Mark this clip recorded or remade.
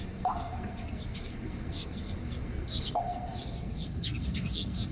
remade